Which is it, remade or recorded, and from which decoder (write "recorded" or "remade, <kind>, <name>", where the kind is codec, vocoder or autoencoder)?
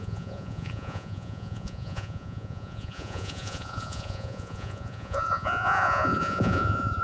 remade, vocoder, Vocos